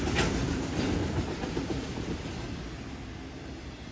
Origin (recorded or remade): recorded